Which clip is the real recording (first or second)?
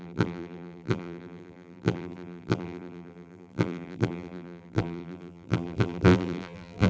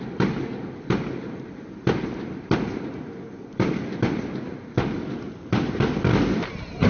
second